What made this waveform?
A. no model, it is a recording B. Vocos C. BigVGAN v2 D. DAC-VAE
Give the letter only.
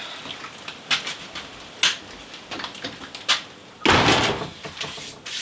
A